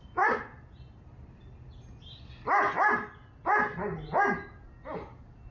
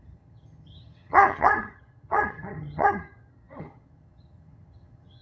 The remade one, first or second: second